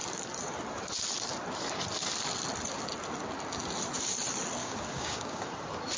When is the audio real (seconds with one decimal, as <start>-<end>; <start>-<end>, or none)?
0.0-4.6; 5.5-6.0